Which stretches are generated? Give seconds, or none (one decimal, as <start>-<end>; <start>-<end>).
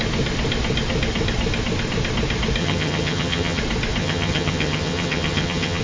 2.6-3.6; 4.0-5.8